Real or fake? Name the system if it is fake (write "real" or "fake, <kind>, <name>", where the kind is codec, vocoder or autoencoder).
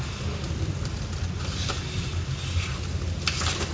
real